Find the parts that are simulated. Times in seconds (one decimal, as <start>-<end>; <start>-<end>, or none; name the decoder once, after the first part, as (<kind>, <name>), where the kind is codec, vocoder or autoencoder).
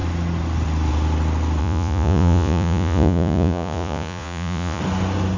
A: 1.6-4.8 (vocoder, Vocos)